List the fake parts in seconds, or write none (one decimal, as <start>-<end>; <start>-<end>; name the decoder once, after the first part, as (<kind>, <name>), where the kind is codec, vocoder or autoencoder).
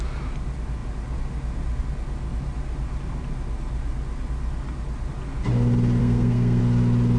6.0-6.6 (codec, SNAC)